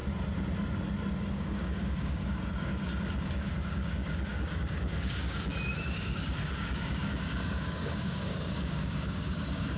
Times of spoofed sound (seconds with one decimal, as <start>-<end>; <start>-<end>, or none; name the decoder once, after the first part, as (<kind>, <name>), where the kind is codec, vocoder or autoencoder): 1.3-9.8 (codec, DAC)